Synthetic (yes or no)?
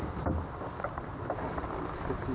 no